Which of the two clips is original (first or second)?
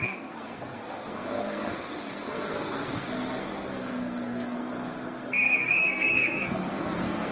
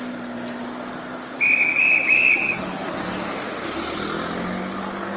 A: second